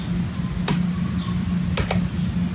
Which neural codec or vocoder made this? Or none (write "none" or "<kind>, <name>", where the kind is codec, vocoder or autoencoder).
none